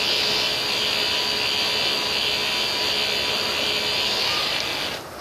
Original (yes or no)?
yes